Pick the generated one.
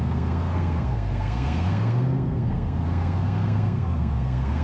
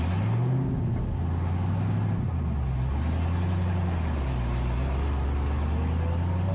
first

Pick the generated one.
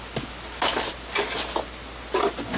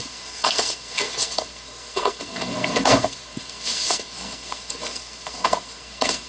second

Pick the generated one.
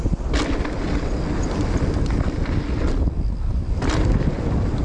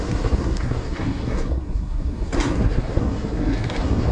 second